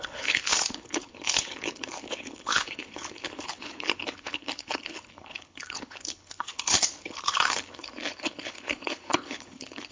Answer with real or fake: fake